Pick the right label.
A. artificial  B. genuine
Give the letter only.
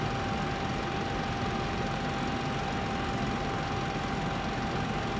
B